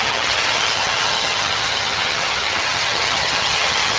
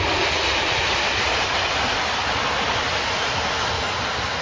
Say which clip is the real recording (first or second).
second